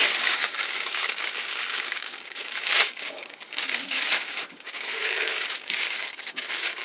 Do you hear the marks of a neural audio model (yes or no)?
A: yes